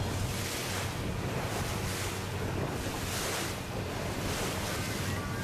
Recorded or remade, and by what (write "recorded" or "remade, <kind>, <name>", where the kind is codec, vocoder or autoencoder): recorded